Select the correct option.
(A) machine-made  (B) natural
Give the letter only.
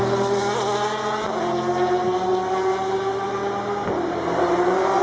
B